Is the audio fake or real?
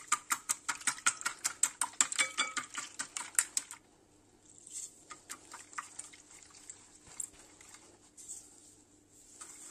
real